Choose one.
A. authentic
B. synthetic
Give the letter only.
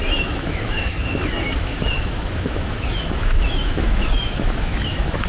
B